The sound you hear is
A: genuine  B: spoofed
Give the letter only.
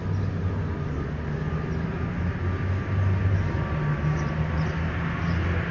A